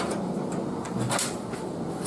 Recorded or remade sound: remade